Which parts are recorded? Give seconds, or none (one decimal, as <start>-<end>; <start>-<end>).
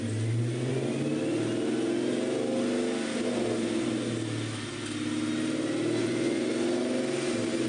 0.0-6.0; 6.5-7.7